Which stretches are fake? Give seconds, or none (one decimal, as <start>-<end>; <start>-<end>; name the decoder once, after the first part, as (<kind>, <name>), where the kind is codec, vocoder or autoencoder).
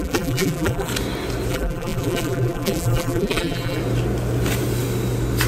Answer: 0.0-0.9 (vocoder, BigVGAN v2); 1.5-3.8